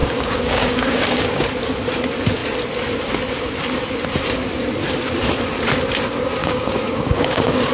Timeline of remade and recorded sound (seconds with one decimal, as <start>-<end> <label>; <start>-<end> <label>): 0.0-1.4 remade; 1.4-6.4 recorded; 6.4-7.7 remade